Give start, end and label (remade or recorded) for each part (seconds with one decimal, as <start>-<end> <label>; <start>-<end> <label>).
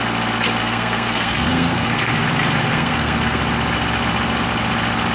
0.0-0.6 recorded; 0.6-2.1 remade; 2.1-2.6 recorded; 2.6-3.4 remade; 3.4-5.1 recorded